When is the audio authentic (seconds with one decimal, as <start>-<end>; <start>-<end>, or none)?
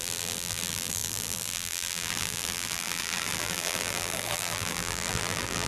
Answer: none